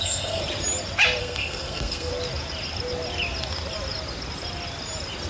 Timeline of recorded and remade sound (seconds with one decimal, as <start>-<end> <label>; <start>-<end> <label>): 0.0-0.4 remade; 0.4-1.2 recorded; 1.2-2.1 remade; 2.1-5.3 recorded